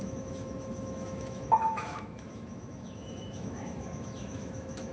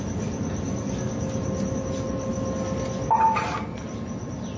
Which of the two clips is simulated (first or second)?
first